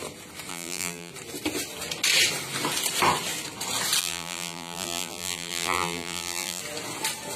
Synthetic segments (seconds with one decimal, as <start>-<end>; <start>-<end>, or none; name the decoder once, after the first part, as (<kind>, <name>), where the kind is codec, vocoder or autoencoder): 0.5-1.1 (vocoder, BigVGAN v2); 4.0-6.6